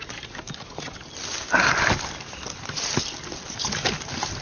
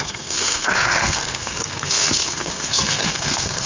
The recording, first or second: first